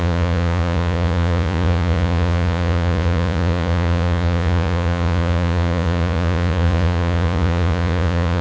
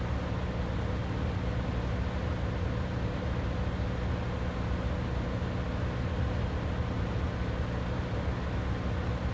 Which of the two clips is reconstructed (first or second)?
first